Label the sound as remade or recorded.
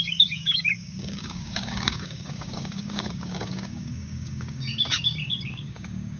remade